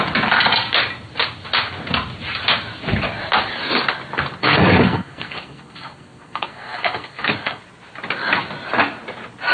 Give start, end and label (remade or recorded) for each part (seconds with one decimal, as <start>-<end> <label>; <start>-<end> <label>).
0.0-4.4 recorded; 4.4-7.6 remade; 7.6-9.5 recorded